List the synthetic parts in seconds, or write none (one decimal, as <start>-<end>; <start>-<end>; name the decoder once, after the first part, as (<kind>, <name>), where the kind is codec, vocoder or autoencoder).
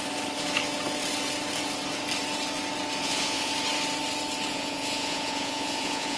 3.0-3.5 (vocoder, Vocos); 4.5-6.2